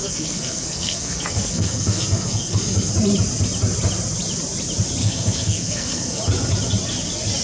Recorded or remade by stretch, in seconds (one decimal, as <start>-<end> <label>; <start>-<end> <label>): 0.0-2.9 remade; 2.9-5.0 recorded; 5.0-6.2 remade; 6.2-7.4 recorded